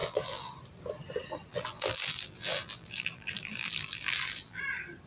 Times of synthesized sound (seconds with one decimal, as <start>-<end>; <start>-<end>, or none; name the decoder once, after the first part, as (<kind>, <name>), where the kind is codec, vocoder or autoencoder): 0.0-0.5 (vocoder, BigVGAN v2); 1.5-4.6